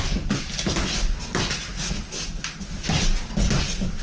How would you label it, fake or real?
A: real